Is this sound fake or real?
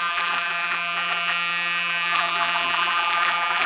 fake